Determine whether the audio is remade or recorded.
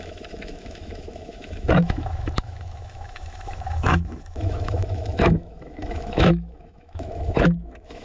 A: remade